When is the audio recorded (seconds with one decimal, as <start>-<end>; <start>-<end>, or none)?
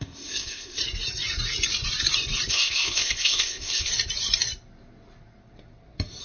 0.8-2.5; 3.9-6.2